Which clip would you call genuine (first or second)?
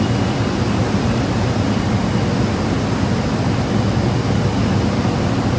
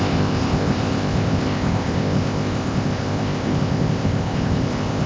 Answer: first